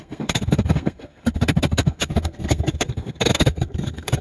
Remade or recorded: remade